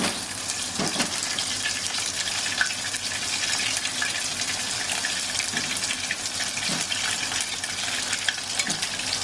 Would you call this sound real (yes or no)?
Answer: yes